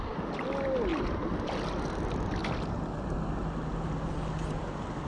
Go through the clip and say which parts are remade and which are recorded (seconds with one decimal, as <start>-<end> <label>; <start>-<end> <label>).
0.0-5.1 recorded